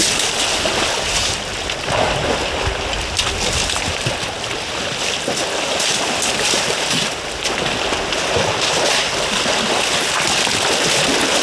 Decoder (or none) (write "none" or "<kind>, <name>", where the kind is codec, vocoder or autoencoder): none